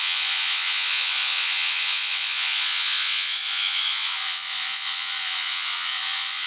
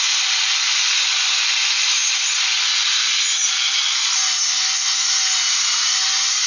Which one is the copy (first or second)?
first